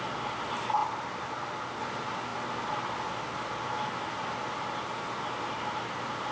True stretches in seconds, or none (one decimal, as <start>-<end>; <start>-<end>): 0.0-6.3